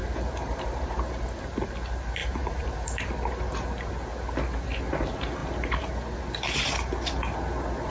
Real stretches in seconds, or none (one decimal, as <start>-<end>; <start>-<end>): 1.4-2.2; 3.1-5.4; 5.9-7.9